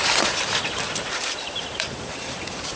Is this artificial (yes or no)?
yes